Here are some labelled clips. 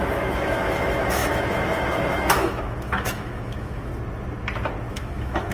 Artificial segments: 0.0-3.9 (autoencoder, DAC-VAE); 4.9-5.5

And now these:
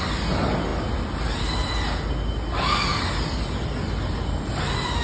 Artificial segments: none